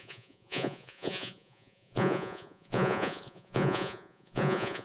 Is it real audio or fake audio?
fake